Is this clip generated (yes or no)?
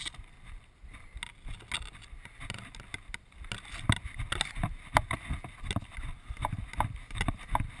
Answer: no